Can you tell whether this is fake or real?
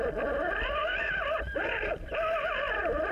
real